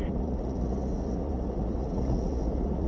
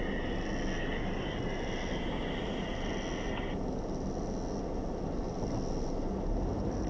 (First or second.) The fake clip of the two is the first